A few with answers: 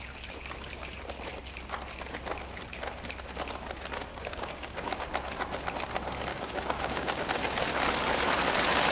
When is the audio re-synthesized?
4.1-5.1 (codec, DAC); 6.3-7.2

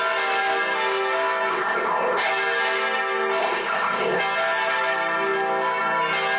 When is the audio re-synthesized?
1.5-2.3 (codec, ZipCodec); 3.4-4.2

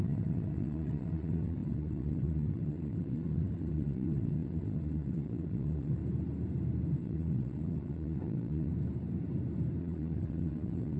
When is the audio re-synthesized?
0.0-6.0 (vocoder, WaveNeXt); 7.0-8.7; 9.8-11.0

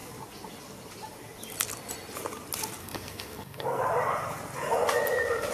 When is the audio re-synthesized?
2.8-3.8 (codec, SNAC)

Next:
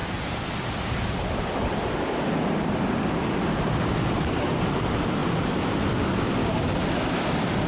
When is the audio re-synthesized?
none